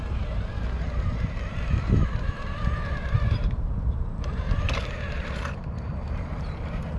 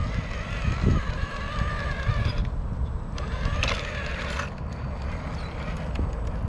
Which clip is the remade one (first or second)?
first